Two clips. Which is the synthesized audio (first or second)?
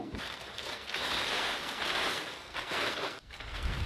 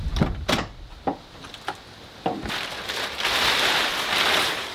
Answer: first